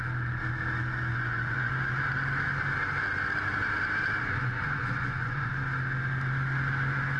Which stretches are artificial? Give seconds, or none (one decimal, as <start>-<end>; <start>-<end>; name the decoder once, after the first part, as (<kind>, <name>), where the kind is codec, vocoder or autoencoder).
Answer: 1.1-1.7 (vocoder, Vocos); 4.2-5.5